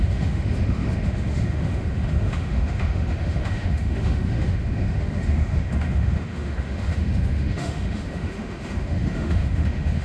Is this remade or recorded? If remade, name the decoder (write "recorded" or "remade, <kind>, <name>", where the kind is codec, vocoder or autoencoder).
remade, autoencoder, DAC-VAE